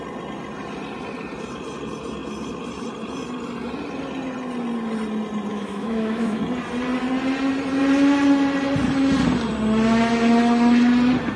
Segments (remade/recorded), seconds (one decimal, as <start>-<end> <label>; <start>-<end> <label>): 0.0-5.5 recorded; 5.5-6.4 remade; 6.4-11.4 recorded